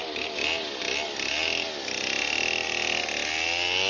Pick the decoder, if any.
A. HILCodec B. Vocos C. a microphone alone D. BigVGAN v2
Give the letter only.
C